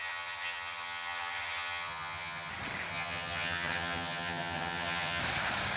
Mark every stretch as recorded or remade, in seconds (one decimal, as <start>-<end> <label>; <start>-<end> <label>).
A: 0.0-2.5 remade; 2.5-2.9 recorded; 2.9-5.2 remade; 5.2-5.8 recorded